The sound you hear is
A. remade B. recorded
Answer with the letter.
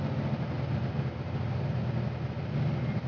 B